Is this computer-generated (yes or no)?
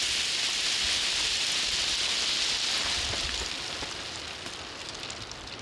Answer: no